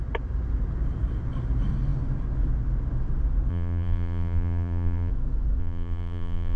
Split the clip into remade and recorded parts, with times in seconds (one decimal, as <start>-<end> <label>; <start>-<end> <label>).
0.0-3.5 recorded; 3.5-5.1 remade; 5.1-5.6 recorded; 5.6-6.6 remade